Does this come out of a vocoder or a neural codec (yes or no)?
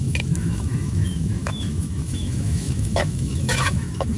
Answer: yes